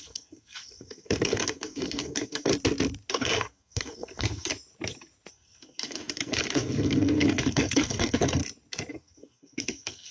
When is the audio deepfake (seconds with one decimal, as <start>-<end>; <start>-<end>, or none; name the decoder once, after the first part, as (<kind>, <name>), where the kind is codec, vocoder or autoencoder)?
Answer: 0.0-2.5 (codec, SNAC); 3.1-4.5; 5.3-8.4; 8.9-10.1